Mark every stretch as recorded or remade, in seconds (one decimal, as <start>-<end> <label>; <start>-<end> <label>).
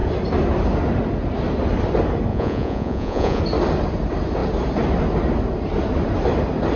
0.0-2.3 recorded; 2.3-3.4 remade; 3.4-6.8 recorded